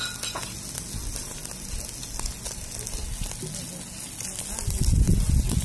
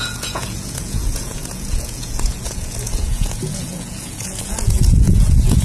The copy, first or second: second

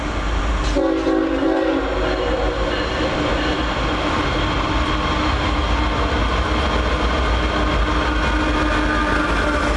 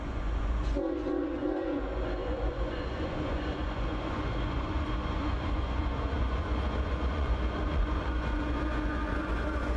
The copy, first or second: second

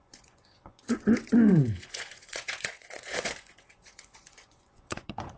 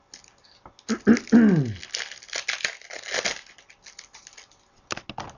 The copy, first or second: first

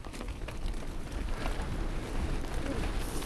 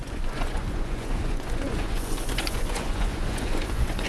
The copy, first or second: second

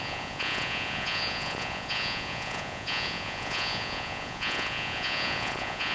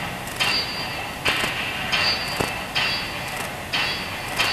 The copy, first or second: first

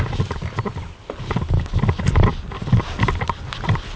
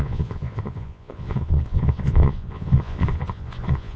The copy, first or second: second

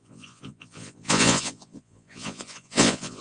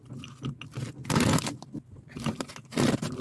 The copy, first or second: first